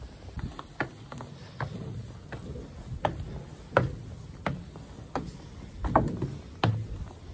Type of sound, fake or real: real